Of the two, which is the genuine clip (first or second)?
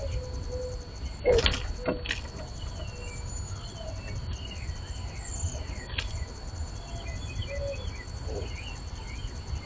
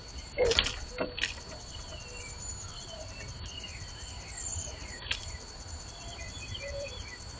first